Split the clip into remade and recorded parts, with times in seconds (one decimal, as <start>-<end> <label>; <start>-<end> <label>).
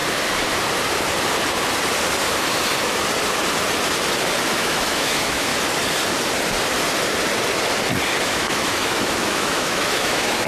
0.0-4.5 recorded; 4.5-5.5 remade; 5.5-8.2 recorded; 8.2-10.5 remade